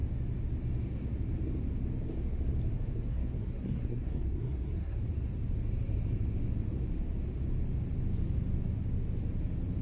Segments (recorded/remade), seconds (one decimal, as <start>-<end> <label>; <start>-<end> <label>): 0.0-3.1 recorded; 3.1-5.0 remade; 5.0-9.8 recorded